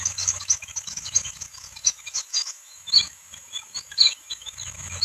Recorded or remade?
remade